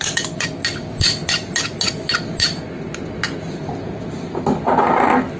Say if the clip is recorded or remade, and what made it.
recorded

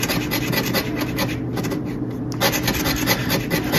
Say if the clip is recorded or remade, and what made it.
recorded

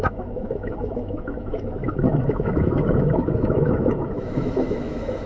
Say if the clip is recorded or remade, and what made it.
remade, autoencoder, DAC-VAE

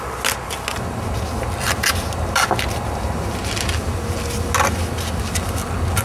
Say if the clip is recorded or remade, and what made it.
recorded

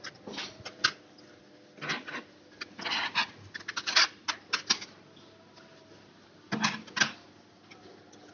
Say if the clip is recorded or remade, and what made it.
recorded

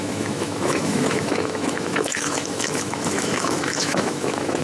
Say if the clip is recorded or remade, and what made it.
remade, autoencoder, DAC-VAE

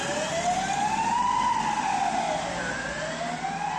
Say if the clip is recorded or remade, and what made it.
recorded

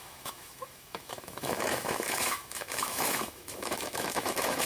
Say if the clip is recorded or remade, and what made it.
remade, autoencoder, DAC-VAE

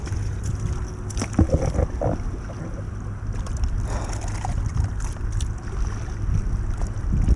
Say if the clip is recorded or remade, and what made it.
recorded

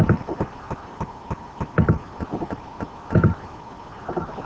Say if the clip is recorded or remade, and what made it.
recorded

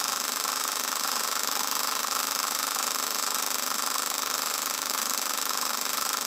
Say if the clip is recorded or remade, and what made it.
remade, autoencoder, DAC-VAE